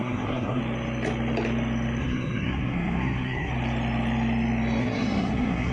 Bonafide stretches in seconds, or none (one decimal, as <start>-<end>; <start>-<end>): 0.6-2.0; 3.5-4.8